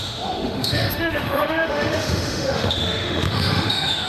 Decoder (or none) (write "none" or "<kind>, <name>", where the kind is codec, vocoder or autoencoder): autoencoder, DAC-VAE